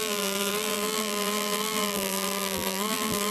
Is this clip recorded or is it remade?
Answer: remade